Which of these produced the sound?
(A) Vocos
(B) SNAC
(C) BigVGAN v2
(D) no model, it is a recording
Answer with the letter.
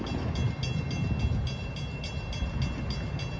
D